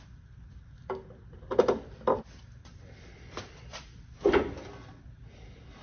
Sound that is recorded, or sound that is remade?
remade